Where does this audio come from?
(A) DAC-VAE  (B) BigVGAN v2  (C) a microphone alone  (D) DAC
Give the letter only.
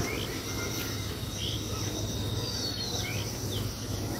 C